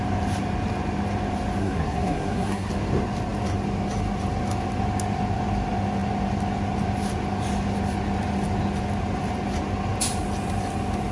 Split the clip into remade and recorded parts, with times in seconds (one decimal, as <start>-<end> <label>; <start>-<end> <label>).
0.0-1.6 recorded; 1.6-2.7 remade; 2.7-11.1 recorded